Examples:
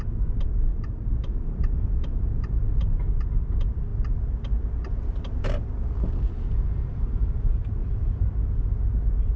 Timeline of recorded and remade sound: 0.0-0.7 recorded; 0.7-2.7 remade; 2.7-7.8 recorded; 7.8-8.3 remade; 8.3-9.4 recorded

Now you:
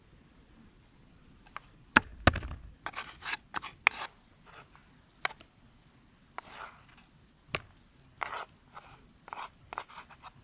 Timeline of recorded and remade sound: 0.0-10.4 recorded

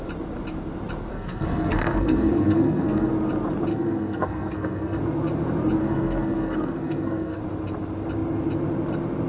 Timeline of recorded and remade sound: 0.0-1.1 recorded; 1.1-3.1 remade; 3.1-3.7 recorded; 3.7-5.0 remade; 5.0-5.8 recorded; 5.8-7.4 remade; 7.4-9.3 recorded